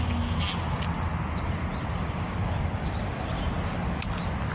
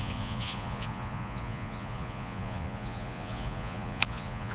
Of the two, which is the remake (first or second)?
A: second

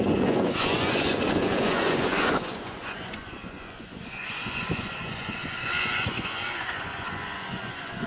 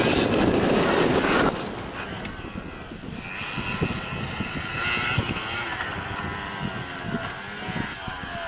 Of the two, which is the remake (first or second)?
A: first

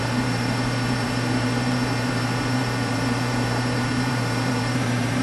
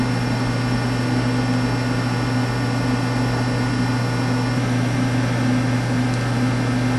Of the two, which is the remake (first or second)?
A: first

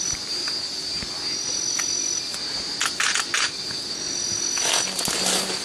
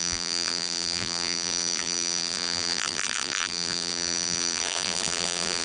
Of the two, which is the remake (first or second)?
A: second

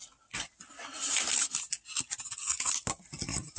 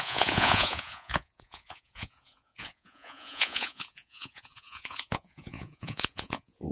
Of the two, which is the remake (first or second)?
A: second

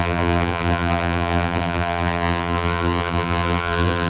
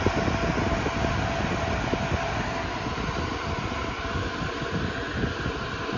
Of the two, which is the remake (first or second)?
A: first